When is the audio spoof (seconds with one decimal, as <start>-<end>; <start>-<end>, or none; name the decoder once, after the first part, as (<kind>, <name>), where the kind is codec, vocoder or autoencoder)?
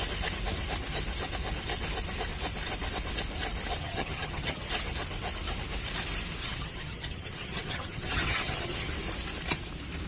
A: 3.8-4.7 (vocoder, HiFi-GAN); 6.4-8.9